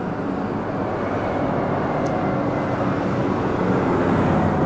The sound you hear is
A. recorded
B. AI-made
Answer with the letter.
A